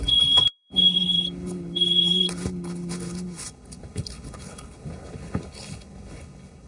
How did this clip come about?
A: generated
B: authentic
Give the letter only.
A